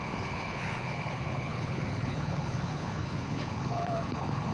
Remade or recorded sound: remade